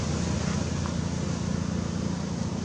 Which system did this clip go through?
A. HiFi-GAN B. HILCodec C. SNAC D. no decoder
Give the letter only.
D